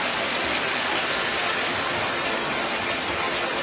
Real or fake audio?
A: real